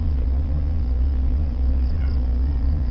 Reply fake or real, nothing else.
fake